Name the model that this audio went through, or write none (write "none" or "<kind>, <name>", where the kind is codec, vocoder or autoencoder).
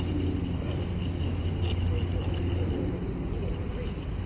none